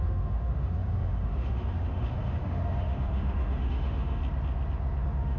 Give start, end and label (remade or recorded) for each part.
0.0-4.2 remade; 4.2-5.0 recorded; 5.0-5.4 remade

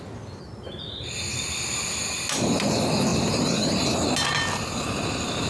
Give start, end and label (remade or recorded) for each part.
0.0-5.5 recorded

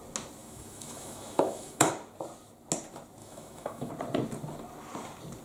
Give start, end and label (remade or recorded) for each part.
0.0-0.4 recorded; 0.4-1.9 remade; 1.9-3.2 recorded; 3.2-3.9 remade; 3.9-5.4 recorded